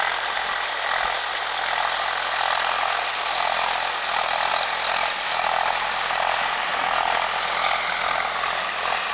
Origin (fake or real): real